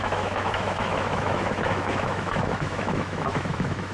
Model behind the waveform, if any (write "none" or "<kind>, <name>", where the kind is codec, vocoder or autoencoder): autoencoder, DAC-VAE